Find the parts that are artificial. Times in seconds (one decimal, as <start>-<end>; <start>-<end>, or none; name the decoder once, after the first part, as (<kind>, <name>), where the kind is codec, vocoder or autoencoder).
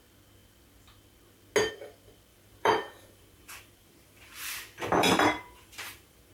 2.3-6.3 (vocoder, BigVGAN v2)